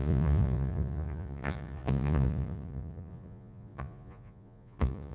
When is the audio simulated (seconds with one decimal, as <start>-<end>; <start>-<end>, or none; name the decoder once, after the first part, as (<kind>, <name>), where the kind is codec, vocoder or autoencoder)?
0.0-5.1 (vocoder, Vocos)